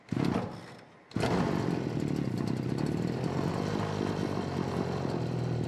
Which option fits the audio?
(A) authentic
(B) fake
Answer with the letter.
A